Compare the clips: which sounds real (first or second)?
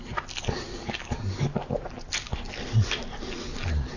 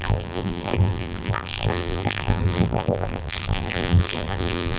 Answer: first